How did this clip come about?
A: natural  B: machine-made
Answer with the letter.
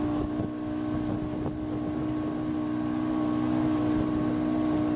A